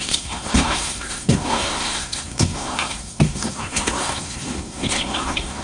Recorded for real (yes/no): no